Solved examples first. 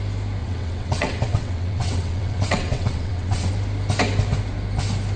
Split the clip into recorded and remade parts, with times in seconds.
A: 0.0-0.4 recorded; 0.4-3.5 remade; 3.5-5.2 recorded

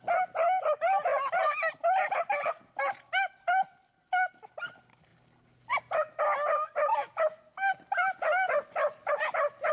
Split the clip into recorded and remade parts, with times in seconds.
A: 0.0-9.7 recorded

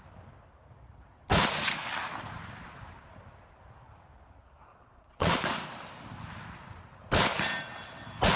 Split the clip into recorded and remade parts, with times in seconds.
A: 0.0-4.7 recorded; 4.7-5.4 remade; 5.4-8.4 recorded